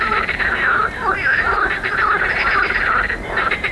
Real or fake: fake